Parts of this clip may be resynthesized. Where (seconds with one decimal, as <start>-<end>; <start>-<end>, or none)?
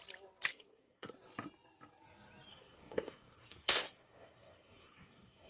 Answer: 0.5-1.1; 2.5-5.5